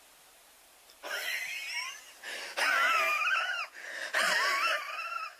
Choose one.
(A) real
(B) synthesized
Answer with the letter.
A